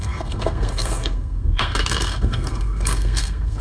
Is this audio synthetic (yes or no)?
yes